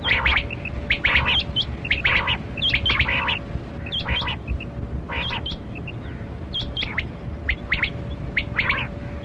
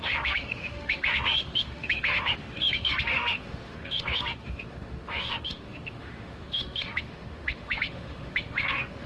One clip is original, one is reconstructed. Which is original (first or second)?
first